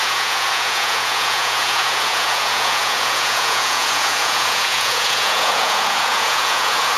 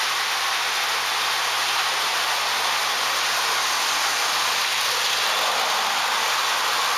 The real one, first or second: second